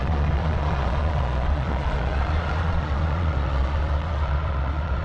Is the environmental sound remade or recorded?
remade